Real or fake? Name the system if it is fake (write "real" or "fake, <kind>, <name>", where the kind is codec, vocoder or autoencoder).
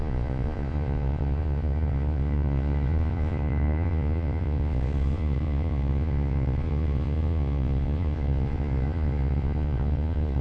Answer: fake, vocoder, Vocos